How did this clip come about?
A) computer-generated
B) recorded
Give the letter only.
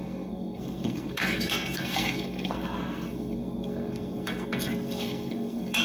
A